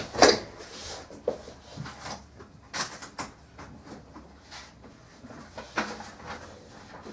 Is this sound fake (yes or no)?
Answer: no